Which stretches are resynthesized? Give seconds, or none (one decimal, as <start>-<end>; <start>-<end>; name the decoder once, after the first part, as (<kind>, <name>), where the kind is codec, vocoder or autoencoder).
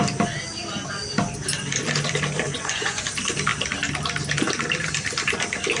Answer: 2.5-3.0 (vocoder, Vocos)